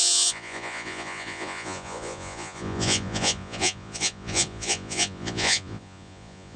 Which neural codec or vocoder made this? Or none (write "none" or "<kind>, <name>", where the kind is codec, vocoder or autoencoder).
vocoder, Vocos